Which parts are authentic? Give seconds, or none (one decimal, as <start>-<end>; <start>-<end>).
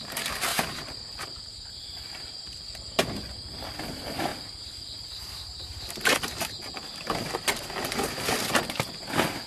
0.0-9.5